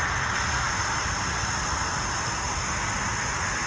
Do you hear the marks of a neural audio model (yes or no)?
no